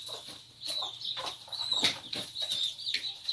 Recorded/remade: recorded